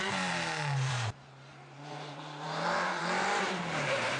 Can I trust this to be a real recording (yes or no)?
no